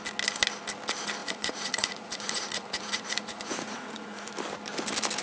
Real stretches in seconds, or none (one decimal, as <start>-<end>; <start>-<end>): 0.0-1.2; 4.3-5.2